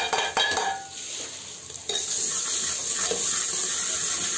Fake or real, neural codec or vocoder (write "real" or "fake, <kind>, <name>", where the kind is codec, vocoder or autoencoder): real